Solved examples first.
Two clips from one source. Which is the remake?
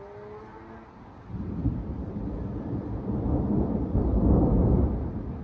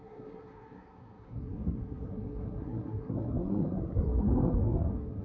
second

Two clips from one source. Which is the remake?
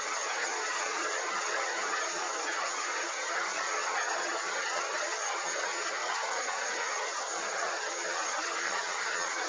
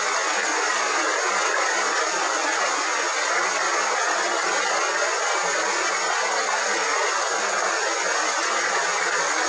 first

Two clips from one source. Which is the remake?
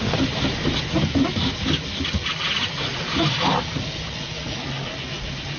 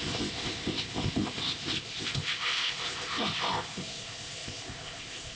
second